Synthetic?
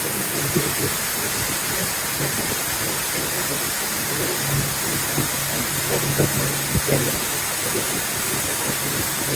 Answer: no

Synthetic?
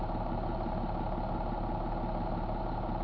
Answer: no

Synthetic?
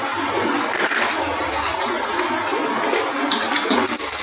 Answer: no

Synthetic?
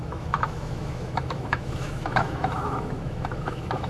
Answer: yes